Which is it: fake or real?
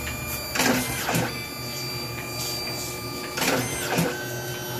real